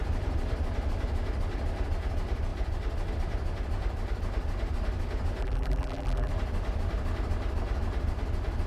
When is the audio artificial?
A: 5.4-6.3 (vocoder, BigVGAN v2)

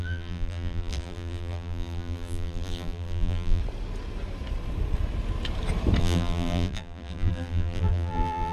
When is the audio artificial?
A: 0.0-3.6 (vocoder, BigVGAN v2); 6.0-8.5

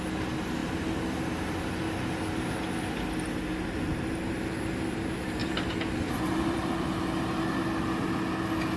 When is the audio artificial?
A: 5.4-7.0 (vocoder, BigVGAN v2)

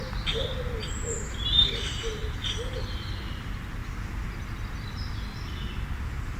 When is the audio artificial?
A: 2.2-3.1 (vocoder, BigVGAN v2)

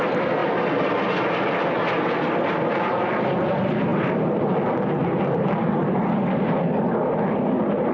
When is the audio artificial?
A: 3.9-4.4 (vocoder, BigVGAN v2); 5.0-5.7